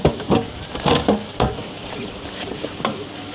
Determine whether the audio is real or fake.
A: real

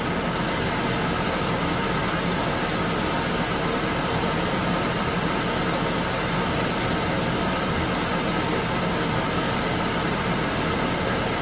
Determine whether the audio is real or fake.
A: real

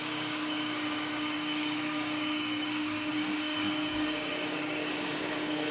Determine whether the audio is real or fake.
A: fake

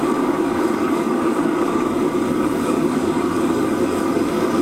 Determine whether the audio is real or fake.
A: fake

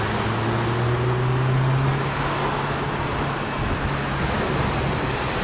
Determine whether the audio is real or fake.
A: real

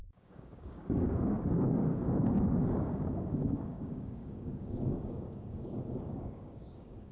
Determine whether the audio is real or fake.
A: fake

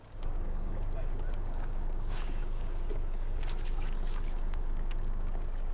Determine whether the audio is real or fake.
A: fake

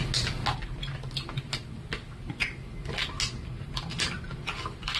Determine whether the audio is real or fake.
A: real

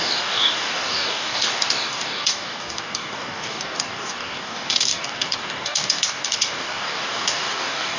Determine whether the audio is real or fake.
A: fake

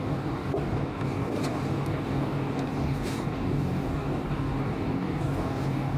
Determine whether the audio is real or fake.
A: fake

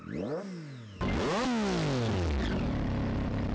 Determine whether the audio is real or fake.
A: real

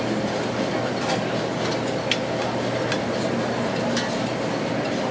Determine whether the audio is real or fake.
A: real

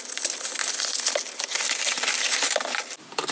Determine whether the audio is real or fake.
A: real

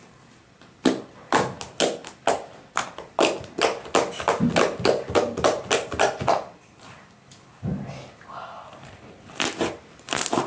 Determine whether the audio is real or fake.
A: real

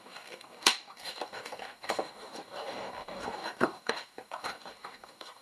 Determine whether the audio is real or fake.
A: fake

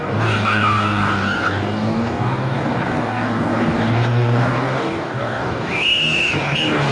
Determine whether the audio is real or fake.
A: fake